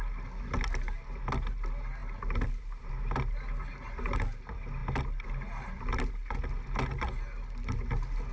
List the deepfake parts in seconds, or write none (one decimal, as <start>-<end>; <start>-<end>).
none